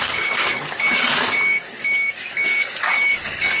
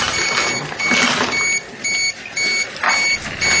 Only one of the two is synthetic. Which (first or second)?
first